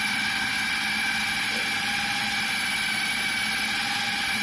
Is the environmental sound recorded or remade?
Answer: recorded